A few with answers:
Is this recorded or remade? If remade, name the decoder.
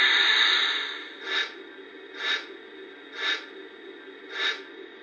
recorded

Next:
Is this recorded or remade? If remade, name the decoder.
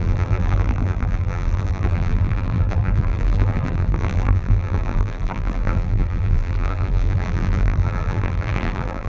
remade, vocoder, BigVGAN v2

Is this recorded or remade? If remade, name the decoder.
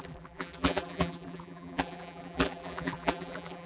remade, vocoder, BigVGAN v2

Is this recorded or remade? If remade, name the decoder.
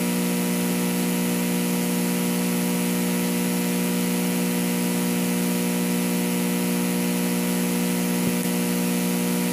recorded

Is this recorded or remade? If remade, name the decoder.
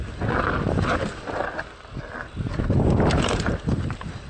recorded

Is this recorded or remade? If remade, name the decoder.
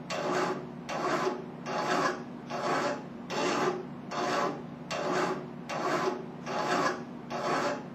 recorded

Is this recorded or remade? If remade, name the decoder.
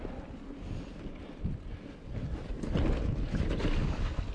recorded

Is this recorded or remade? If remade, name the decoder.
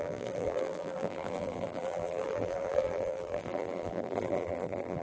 remade, vocoder, BigVGAN v2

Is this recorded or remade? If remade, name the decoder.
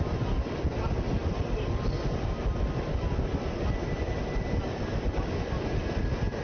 recorded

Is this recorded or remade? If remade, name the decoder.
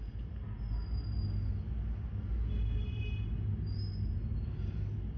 recorded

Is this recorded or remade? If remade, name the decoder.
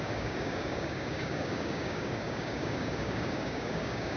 remade, codec, DAC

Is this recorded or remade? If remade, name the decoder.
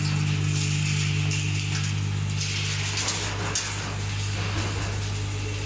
recorded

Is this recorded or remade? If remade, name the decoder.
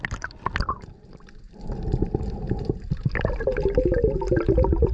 recorded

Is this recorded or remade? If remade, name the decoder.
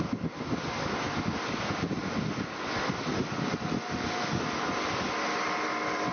recorded